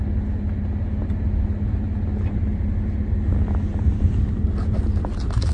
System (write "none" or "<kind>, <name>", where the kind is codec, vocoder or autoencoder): none